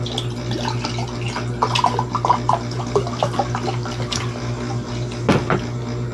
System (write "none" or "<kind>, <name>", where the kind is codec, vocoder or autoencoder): none